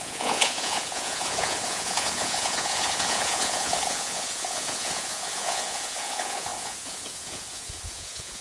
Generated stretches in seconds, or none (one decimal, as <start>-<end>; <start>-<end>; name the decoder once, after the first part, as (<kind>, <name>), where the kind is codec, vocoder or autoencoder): 0.0-8.4 (vocoder, Vocos)

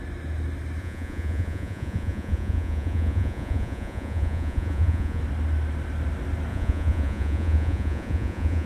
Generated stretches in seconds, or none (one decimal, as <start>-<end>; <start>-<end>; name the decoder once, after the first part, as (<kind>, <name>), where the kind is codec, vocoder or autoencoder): 0.8-5.2 (vocoder, Vocos); 6.5-8.7